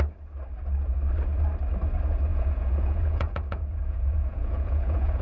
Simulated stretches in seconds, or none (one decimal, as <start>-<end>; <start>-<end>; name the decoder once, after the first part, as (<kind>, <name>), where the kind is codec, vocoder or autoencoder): 2.3-5.2 (vocoder, Vocos)